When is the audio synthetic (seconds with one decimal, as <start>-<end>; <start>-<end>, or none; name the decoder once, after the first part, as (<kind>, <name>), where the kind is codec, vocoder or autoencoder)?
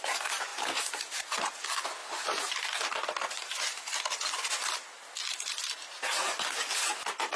2.0-4.9 (vocoder, BigVGAN v2)